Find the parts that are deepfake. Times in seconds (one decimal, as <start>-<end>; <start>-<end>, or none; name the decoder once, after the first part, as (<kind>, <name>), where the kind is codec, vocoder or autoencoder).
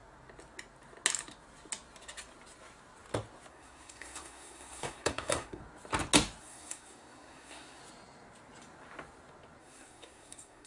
3.5-5.6 (codec, SNAC); 6.4-7.8; 9.6-10.7